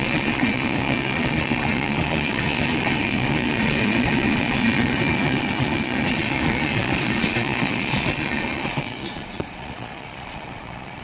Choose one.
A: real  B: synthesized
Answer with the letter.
B